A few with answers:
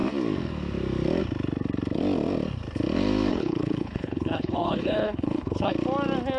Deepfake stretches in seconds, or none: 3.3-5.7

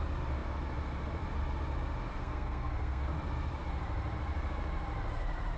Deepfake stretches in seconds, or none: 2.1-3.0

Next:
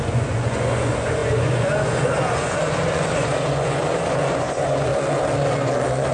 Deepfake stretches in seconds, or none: 0.0-4.9

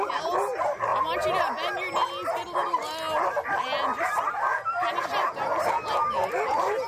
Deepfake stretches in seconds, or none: none

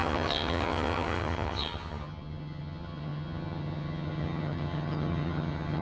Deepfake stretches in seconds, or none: 0.0-5.8